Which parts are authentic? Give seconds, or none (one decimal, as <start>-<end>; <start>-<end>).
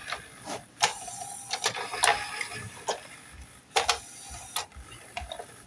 1.3-2.1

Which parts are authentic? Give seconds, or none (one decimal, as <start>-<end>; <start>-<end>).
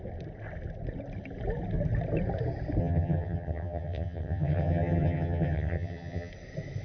0.0-2.8; 6.3-6.8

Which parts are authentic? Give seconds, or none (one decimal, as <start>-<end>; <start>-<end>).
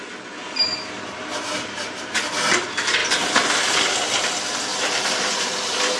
0.0-1.3; 2.3-3.0; 3.8-4.7; 5.3-6.0